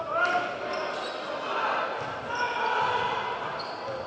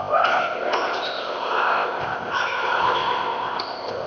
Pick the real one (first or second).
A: first